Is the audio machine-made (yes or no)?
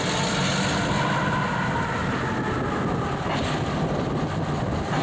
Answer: no